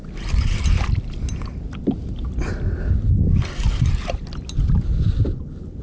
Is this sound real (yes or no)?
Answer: yes